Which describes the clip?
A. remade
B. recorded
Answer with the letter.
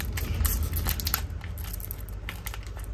B